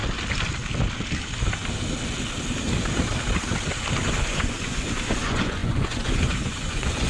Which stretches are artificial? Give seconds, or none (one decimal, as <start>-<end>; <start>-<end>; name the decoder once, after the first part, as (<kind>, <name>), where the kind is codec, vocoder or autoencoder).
4.1-7.1 (vocoder, Vocos)